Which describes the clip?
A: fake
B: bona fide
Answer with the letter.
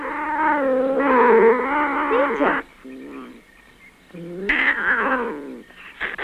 B